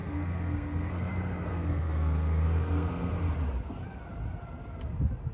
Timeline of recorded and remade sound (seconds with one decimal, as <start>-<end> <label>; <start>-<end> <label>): 0.0-1.1 remade; 1.1-1.5 recorded; 1.5-3.1 remade; 3.1-5.3 recorded